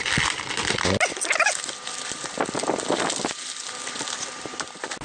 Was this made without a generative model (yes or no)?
yes